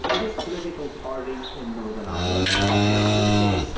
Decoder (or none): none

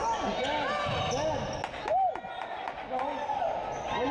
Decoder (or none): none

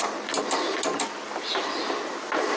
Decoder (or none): none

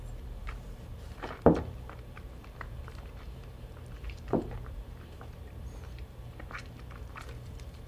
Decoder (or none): vocoder, BigVGAN v2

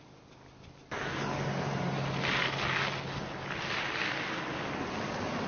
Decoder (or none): none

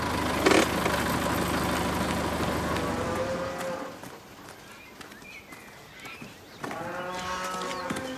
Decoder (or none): none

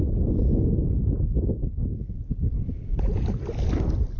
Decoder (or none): none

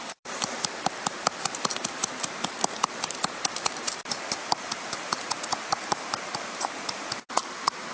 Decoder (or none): vocoder, BigVGAN v2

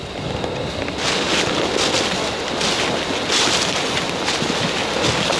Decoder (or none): none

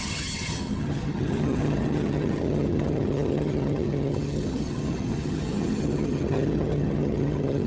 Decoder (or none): vocoder, HiFi-GAN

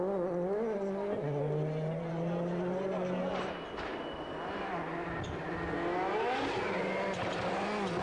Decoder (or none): none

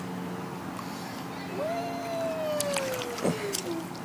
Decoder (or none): none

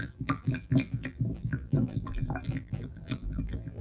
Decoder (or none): vocoder, BigVGAN v2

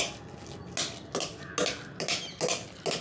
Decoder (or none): none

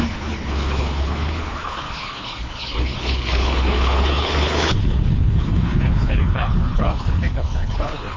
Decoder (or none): codec, HILCodec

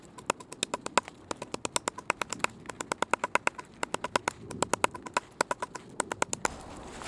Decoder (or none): none